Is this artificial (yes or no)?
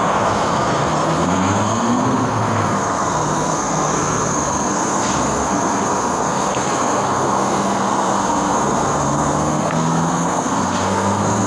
yes